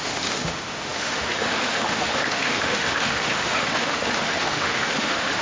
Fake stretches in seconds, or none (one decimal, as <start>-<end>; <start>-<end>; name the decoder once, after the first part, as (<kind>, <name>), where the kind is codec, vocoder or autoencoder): 0.0-5.4 (autoencoder, DAC-VAE)